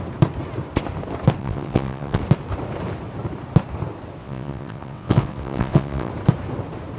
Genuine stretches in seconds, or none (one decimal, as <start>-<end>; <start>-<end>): 0.0-1.4; 2.2-4.2; 6.1-7.0